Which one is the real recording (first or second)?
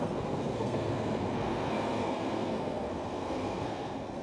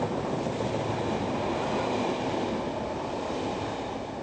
second